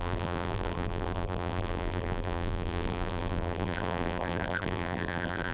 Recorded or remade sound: remade